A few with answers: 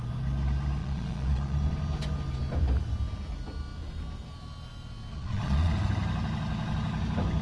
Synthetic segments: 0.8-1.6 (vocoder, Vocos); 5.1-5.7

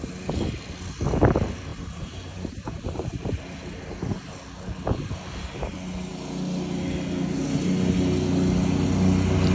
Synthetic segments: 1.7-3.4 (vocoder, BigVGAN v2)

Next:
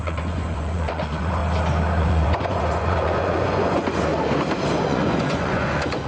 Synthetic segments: 0.0-1.4 (vocoder, Vocos); 2.0-4.1; 4.8-6.1

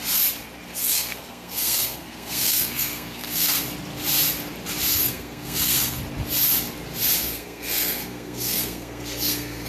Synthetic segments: 0.8-3.6 (codec, SNAC); 4.9-6.0; 7.2-9.7

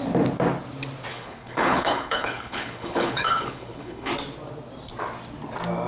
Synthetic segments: 1.1-4.1 (codec, HILCodec)